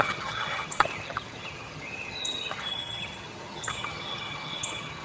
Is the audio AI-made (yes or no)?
yes